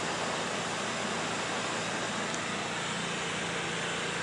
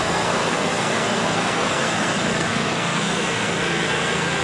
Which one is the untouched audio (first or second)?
first